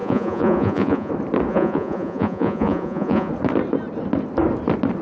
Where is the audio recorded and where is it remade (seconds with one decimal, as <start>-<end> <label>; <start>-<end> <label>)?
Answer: 0.0-1.1 remade; 1.1-1.5 recorded; 1.5-3.3 remade; 3.3-5.0 recorded